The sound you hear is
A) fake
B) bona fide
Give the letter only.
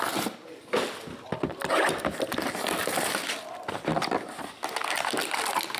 B